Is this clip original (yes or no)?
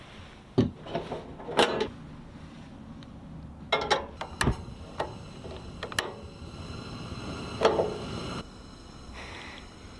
yes